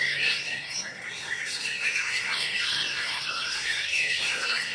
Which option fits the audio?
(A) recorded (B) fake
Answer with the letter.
B